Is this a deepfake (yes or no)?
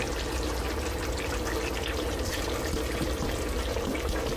no